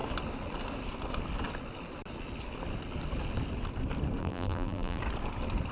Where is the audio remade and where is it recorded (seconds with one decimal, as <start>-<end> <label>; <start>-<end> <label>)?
0.0-4.2 recorded; 4.2-5.0 remade; 5.0-5.7 recorded